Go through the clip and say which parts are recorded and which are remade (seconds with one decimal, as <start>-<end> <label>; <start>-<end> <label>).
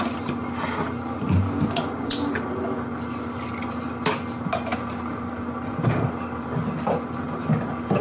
0.0-8.0 recorded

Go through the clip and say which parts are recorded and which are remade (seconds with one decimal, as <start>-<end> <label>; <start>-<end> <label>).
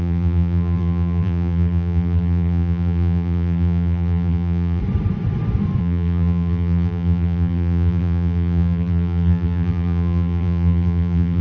0.0-4.8 remade; 4.8-5.8 recorded; 5.8-11.4 remade